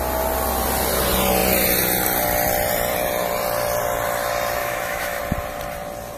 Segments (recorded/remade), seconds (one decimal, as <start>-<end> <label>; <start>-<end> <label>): 0.0-4.6 recorded; 4.6-5.2 remade; 5.2-6.2 recorded